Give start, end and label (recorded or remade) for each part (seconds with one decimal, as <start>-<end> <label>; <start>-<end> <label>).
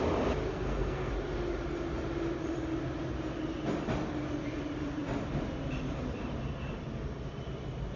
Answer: 0.0-0.5 recorded; 0.5-1.1 remade; 1.1-8.0 recorded